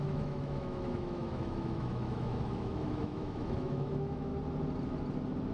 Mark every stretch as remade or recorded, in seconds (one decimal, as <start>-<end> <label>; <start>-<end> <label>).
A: 0.0-4.3 remade; 4.3-5.5 recorded